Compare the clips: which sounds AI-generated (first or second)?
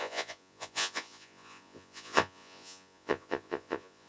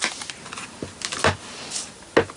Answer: first